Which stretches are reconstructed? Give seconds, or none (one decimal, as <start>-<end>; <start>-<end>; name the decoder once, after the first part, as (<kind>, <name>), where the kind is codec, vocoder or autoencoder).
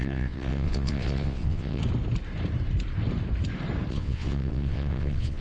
0.0-1.8 (vocoder, WaveNeXt); 3.9-5.4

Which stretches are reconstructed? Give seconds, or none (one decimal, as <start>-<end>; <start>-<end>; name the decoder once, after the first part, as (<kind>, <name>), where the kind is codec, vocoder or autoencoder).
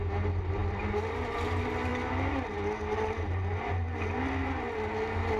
none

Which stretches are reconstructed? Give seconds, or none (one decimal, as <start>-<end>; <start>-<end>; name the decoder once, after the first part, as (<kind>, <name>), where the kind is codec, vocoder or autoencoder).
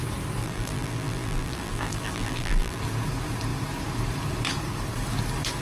0.4-2.8 (vocoder, BigVGAN v2)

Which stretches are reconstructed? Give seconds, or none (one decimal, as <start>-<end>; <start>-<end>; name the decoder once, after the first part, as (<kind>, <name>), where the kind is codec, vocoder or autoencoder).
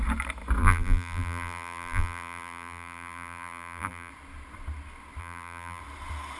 0.6-4.1 (vocoder, BigVGAN v2); 5.2-5.8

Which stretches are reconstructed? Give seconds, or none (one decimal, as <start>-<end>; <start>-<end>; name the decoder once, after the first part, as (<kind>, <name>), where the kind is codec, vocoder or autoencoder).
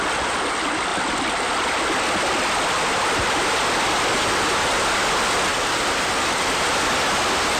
0.9-1.4 (vocoder, BigVGAN v2); 5.5-6.6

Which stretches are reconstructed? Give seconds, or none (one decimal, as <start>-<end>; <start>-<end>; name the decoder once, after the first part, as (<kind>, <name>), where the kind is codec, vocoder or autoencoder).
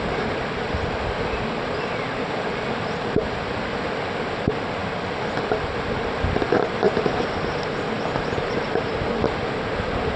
none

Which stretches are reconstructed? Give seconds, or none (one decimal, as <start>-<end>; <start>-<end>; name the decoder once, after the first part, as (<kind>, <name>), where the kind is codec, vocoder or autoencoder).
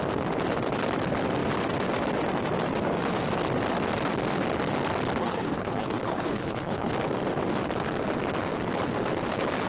5.2-6.9 (codec, HILCodec)